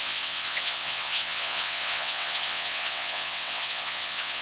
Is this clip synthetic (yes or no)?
yes